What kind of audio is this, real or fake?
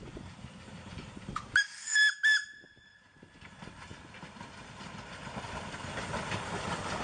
real